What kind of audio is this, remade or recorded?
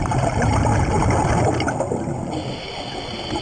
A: recorded